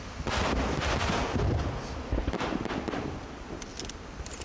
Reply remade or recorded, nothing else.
recorded